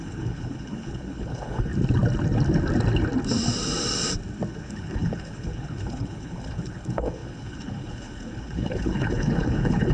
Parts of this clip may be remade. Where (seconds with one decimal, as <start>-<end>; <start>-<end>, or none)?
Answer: 0.0-1.7; 4.5-9.9